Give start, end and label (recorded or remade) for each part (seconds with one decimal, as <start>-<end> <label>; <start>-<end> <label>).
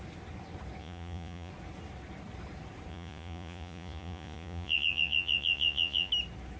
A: 0.0-0.8 recorded; 0.8-1.5 remade; 1.5-2.9 recorded; 2.9-6.1 remade; 6.1-6.6 recorded